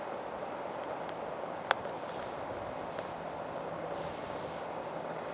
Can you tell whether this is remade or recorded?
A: recorded